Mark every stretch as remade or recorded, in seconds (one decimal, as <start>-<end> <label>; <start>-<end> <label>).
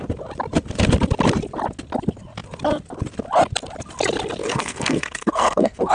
0.0-4.4 recorded; 4.4-5.9 remade